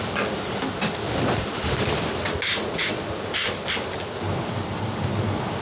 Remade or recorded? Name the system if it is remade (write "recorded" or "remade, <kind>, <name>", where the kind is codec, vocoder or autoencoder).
recorded